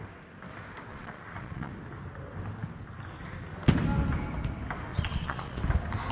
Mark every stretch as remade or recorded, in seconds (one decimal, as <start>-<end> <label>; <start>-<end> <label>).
0.0-0.9 recorded; 0.9-1.7 remade; 1.7-4.9 recorded; 4.9-5.6 remade; 5.6-6.1 recorded